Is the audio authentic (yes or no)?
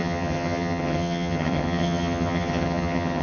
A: no